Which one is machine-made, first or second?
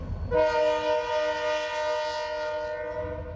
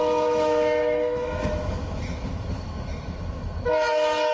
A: second